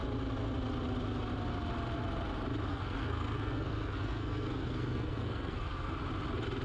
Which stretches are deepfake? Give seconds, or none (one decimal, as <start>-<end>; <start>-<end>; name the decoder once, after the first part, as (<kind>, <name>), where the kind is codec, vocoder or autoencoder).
2.7-5.9 (codec, SNAC)